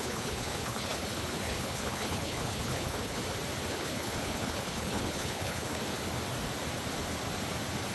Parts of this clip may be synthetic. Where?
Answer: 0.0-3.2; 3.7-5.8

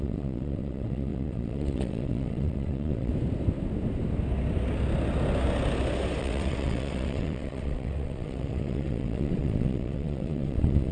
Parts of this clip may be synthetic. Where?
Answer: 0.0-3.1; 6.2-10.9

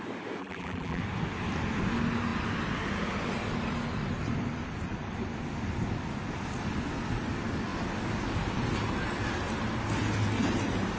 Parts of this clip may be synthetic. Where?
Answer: 0.4-1.0

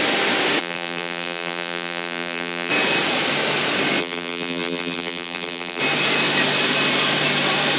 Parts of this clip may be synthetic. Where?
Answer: 0.6-2.7; 4.0-5.8